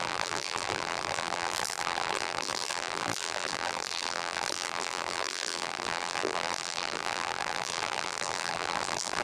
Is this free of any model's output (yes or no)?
no